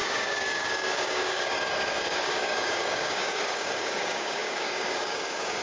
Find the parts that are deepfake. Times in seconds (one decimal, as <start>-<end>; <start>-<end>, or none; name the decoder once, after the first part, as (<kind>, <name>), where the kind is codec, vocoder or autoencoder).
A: 0.0-5.6 (codec, DAC)